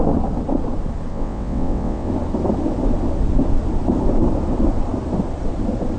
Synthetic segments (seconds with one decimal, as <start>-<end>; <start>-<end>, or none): 1.1-2.1